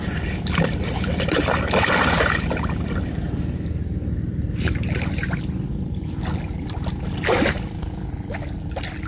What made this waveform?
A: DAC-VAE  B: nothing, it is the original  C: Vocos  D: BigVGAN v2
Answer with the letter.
B